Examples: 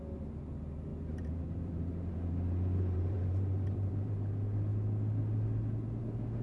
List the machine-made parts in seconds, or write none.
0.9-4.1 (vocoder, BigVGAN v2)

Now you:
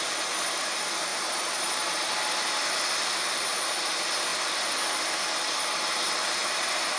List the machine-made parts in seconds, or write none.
1.1-2.1 (vocoder, BigVGAN v2)

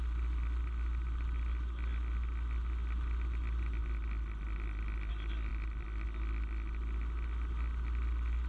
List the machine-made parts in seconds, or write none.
none

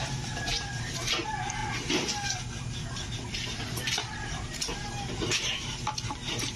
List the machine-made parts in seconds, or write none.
0.0-1.6 (vocoder, BigVGAN v2); 2.4-6.6

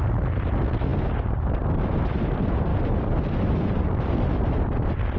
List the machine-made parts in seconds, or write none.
2.7-4.4 (vocoder, BigVGAN v2)

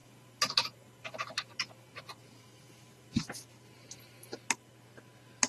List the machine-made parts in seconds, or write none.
0.0-3.3 (vocoder, BigVGAN v2)

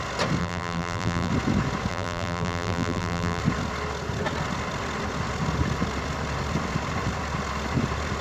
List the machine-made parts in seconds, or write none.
0.4-1.3 (vocoder, BigVGAN v2); 1.9-3.4

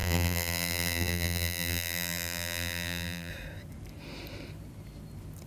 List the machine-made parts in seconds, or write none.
0.0-3.3 (vocoder, BigVGAN v2)